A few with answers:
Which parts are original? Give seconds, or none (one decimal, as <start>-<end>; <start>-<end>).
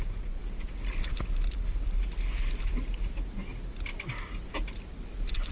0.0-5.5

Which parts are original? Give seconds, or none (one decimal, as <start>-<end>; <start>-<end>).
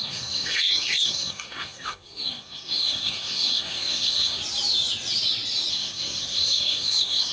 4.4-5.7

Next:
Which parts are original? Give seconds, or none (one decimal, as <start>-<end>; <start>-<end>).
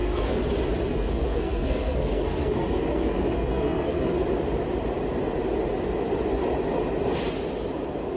0.4-0.9; 4.2-8.2